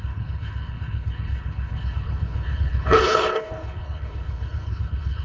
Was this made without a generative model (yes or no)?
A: no